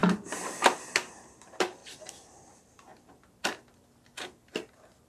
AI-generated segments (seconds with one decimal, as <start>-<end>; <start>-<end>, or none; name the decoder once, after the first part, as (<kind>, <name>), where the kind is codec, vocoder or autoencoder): 1.1-1.8 (vocoder, BigVGAN v2); 2.5-2.9